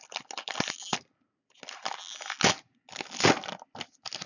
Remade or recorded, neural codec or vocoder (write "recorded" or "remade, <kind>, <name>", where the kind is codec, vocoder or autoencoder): recorded